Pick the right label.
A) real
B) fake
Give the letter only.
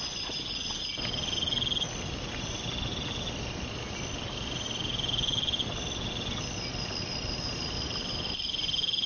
A